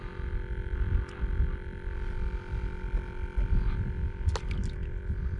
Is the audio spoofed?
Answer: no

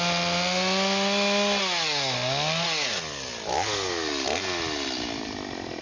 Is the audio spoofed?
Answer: no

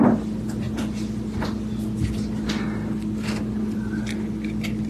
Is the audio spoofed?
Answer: no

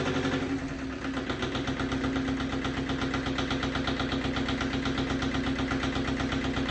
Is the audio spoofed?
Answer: no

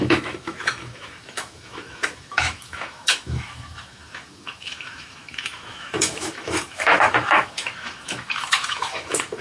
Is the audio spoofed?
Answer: yes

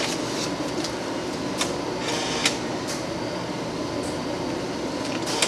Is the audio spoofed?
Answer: no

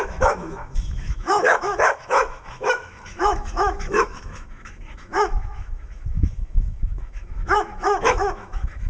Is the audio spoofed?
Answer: yes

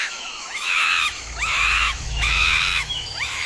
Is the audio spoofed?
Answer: yes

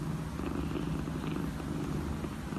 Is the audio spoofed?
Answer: no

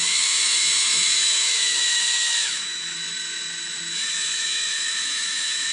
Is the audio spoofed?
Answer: yes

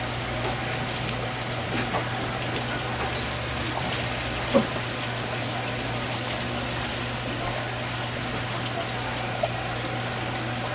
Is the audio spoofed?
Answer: no